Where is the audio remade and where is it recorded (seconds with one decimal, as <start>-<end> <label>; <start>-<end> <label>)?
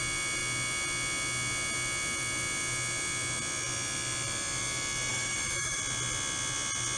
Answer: 0.0-5.1 recorded; 5.1-5.8 remade; 5.8-7.0 recorded